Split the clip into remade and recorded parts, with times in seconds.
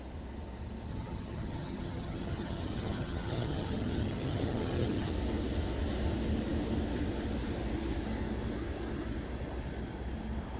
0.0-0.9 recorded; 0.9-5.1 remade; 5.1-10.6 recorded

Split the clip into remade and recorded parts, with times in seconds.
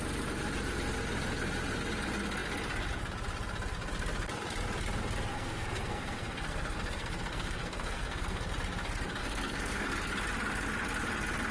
0.0-5.3 recorded; 5.3-8.5 remade; 8.5-9.2 recorded; 9.2-10.1 remade; 10.1-11.5 recorded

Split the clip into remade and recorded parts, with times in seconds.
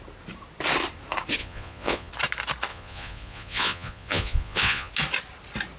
0.0-1.4 recorded; 1.4-2.1 remade; 2.1-2.7 recorded; 2.7-4.9 remade; 4.9-5.8 recorded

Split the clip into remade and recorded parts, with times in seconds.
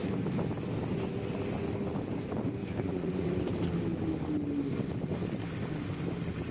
0.0-2.6 recorded; 2.6-3.5 remade; 3.5-6.5 recorded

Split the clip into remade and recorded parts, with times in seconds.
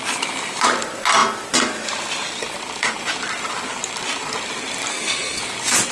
0.0-4.9 recorded; 4.9-5.4 remade; 5.4-5.9 recorded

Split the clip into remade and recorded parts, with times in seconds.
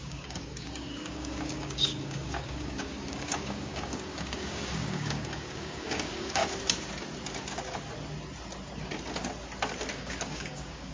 0.0-6.4 remade; 6.4-9.9 recorded; 9.9-10.9 remade